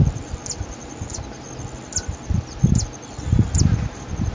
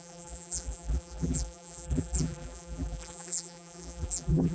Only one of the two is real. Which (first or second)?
first